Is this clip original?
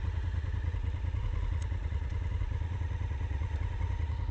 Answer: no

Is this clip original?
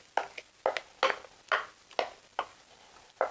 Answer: yes